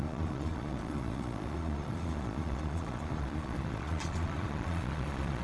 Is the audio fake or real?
fake